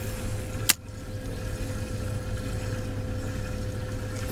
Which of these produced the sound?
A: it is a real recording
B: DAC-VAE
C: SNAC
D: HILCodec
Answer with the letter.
A